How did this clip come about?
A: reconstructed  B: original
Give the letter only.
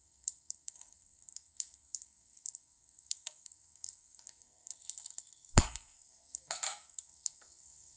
A